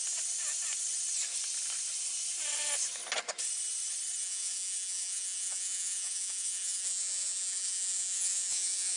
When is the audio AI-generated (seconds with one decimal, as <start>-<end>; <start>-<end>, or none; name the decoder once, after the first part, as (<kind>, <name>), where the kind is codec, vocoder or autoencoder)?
4.2-9.0 (vocoder, Vocos)